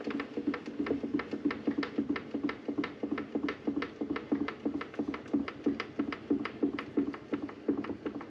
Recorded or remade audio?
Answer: recorded